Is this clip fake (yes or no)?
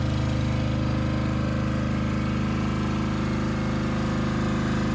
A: no